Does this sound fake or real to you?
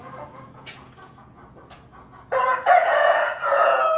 fake